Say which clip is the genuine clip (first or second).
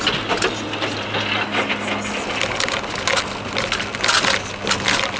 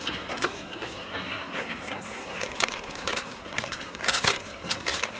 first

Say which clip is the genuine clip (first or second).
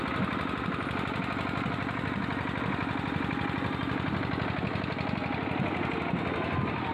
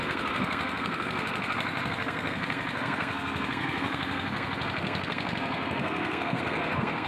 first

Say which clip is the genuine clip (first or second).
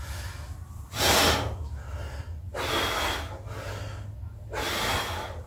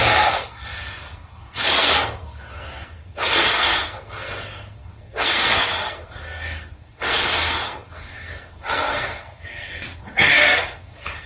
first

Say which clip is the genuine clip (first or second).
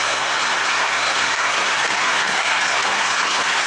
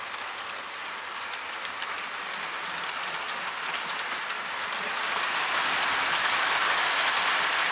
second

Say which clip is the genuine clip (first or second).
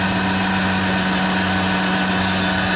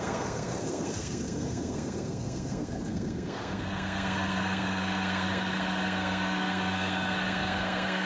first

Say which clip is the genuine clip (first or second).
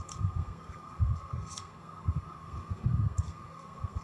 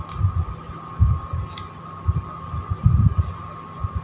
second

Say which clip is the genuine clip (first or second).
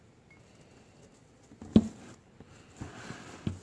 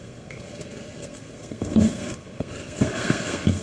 first